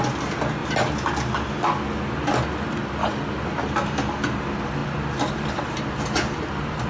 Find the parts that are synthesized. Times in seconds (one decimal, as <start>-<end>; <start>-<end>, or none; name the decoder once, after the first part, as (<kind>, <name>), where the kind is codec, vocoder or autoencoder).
none